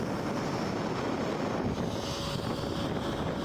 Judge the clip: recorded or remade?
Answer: recorded